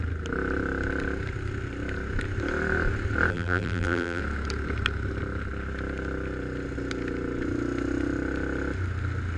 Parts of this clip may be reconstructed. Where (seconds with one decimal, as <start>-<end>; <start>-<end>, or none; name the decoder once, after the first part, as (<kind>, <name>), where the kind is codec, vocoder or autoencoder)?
3.3-4.2 (vocoder, BigVGAN v2)